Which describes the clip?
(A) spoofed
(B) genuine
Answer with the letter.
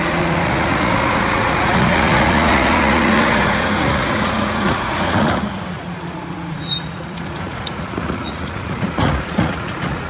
A